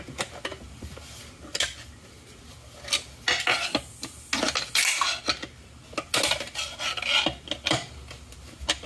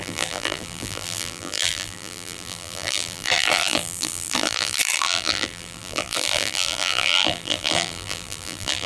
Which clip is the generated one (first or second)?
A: second